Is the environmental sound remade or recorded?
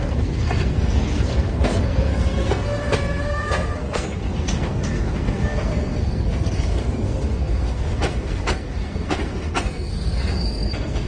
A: remade